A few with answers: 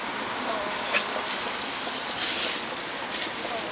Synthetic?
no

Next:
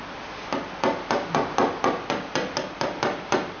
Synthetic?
no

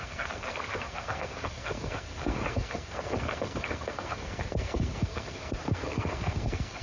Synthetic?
yes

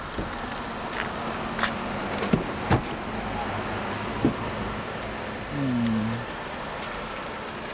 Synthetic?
no